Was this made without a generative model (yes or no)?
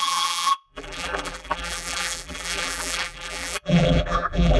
no